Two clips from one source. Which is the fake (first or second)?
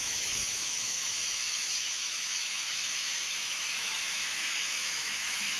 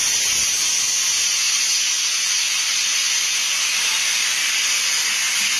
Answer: first